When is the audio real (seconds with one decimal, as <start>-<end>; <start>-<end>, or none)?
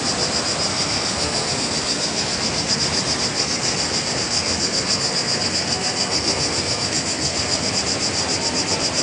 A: 0.0-0.7; 2.8-3.3; 7.7-9.0